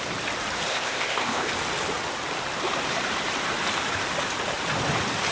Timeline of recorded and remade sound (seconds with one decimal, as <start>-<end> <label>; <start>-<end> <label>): 0.0-0.7 recorded; 0.7-1.5 remade; 1.5-5.3 recorded